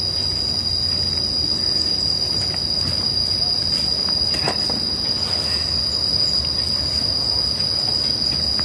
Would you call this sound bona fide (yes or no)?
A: yes